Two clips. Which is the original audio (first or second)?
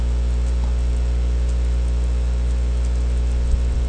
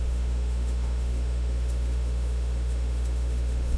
first